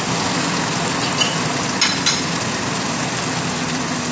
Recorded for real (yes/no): yes